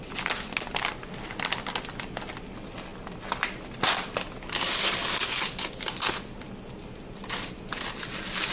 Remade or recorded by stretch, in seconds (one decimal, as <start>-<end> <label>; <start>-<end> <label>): 0.0-8.5 recorded